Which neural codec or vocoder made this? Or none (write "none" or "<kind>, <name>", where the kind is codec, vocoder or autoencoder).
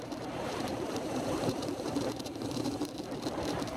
vocoder, BigVGAN v2